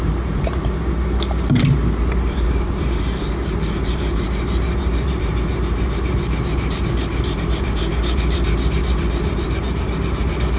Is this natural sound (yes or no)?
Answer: no